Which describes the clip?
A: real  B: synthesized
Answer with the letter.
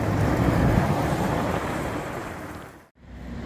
B